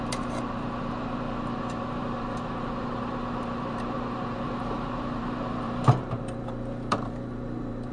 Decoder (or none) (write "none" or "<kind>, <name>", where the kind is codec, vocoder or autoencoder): vocoder, BigVGAN v2